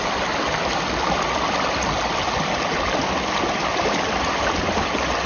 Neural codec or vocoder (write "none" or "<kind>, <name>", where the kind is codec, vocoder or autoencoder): none